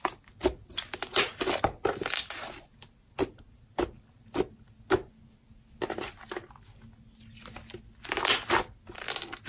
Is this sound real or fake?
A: real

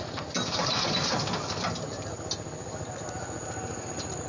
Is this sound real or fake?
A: real